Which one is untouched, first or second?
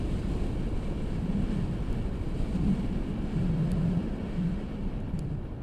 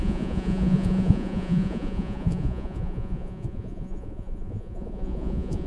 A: first